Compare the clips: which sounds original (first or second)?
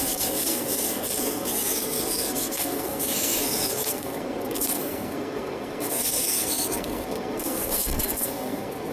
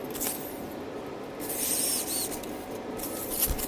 second